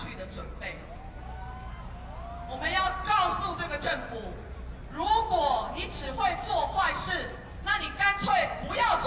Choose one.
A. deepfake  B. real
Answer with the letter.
B